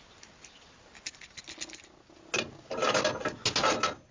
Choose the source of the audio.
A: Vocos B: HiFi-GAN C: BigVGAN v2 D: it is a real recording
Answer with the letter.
D